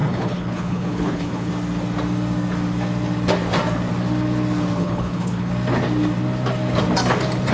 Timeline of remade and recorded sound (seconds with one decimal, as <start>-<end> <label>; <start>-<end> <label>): 0.0-1.5 remade; 1.5-4.8 recorded; 4.8-5.5 remade; 5.5-7.5 recorded